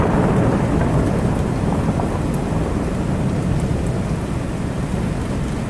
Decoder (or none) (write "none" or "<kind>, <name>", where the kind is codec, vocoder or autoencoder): none